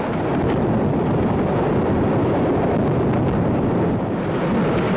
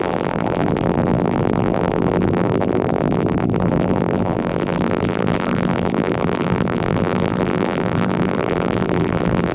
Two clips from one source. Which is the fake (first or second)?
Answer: second